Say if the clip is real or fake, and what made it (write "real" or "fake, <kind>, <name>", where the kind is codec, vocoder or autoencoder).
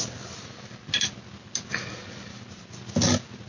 real